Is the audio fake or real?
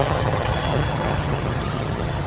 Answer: fake